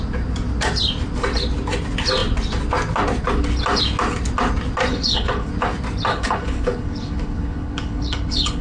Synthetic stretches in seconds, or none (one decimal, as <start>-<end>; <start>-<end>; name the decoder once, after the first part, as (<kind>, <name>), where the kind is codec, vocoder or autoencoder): 4.9-5.5 (codec, HILCodec); 6.1-8.6